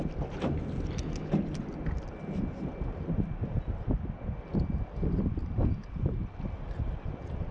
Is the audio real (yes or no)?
yes